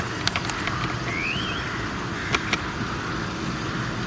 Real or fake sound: real